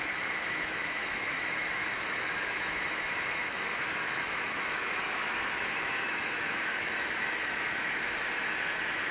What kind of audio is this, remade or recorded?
remade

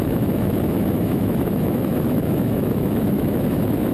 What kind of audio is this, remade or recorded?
remade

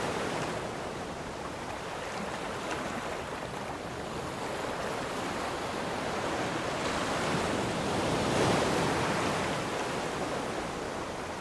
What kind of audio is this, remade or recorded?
recorded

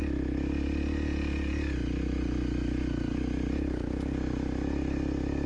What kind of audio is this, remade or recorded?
recorded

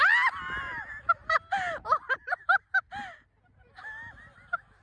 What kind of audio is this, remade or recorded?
recorded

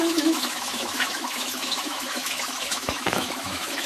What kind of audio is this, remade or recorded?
remade